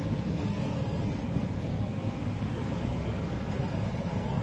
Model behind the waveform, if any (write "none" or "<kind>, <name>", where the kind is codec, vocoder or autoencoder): codec, SNAC